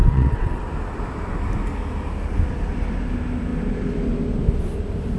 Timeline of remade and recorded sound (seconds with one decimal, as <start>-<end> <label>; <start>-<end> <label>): 0.0-0.6 remade; 0.6-5.2 recorded